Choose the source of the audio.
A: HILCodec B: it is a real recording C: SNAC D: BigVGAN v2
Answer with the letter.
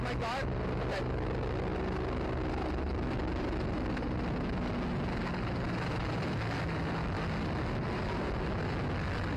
B